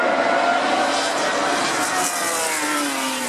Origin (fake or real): real